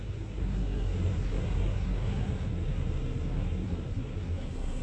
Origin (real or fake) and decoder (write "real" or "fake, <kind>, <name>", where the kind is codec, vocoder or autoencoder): fake, codec, SNAC